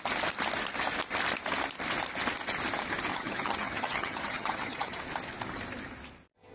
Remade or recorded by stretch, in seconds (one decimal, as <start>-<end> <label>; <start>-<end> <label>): 0.0-3.1 recorded; 3.1-5.0 remade; 5.0-6.5 recorded

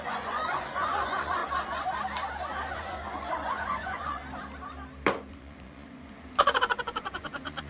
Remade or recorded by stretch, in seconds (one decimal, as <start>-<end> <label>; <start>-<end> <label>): 0.0-1.4 remade; 1.4-2.7 recorded; 2.7-4.2 remade; 4.2-5.3 recorded; 5.3-7.7 remade